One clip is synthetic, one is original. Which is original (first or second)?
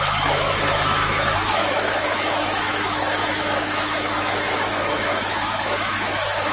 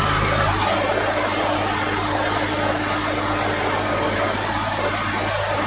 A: second